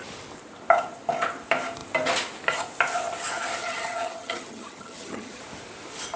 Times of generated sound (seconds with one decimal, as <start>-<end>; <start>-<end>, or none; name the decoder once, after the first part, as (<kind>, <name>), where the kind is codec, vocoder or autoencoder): 3.6-5.4 (vocoder, HiFi-GAN)